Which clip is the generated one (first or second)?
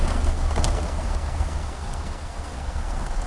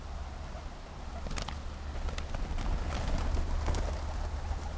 first